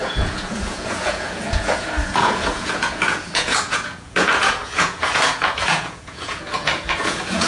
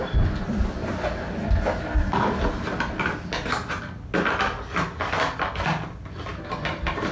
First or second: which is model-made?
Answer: first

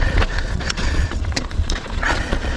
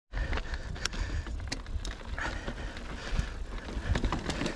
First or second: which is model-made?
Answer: first